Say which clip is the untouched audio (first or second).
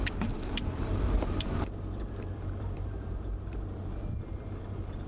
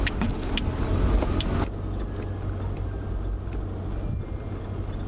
second